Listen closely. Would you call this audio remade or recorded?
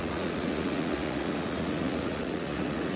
remade